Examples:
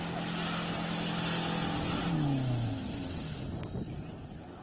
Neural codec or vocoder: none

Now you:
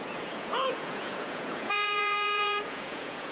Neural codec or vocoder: vocoder, Vocos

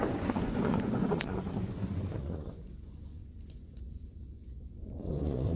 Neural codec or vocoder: vocoder, Vocos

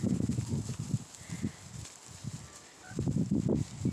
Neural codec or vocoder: none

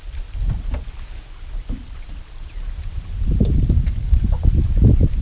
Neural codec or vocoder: none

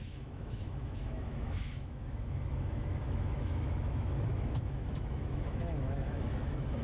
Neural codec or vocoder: autoencoder, DAC-VAE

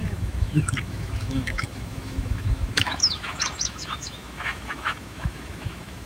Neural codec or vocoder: autoencoder, DAC-VAE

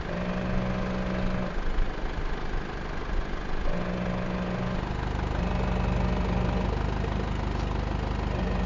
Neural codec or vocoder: none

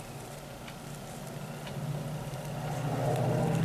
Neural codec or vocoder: none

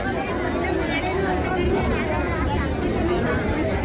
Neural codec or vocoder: none